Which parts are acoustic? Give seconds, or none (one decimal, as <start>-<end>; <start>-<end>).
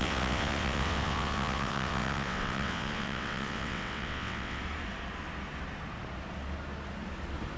4.6-7.6